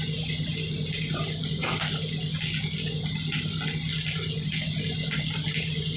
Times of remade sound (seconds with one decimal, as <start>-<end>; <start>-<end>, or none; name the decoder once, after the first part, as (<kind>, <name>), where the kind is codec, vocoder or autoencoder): none